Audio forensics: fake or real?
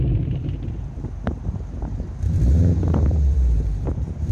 fake